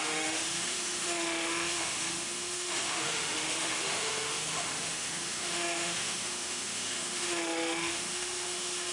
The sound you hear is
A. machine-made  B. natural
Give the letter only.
A